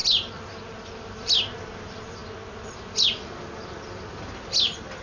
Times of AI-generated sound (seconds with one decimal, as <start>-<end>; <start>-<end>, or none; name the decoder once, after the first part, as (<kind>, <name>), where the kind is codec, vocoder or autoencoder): 1.0-2.2 (vocoder, BigVGAN v2); 4.1-5.0